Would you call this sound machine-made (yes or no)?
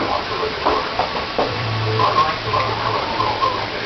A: yes